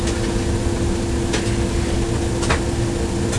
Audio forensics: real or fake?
real